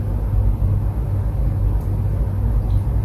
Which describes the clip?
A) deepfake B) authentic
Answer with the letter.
B